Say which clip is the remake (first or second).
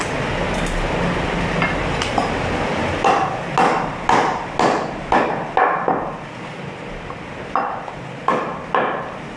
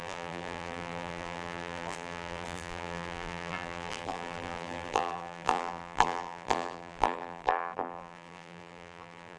second